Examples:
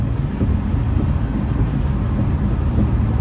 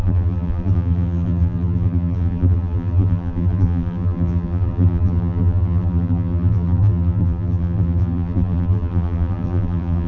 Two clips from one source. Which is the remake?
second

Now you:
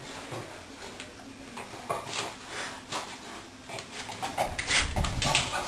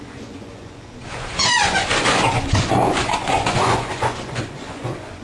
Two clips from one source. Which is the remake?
second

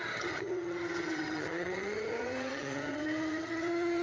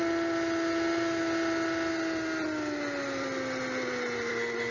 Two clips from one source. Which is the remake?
first